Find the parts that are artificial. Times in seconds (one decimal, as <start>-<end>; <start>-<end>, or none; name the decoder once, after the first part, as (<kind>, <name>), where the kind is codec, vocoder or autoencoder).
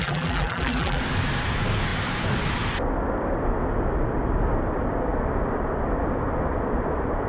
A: 0.0-1.0 (vocoder, BigVGAN v2)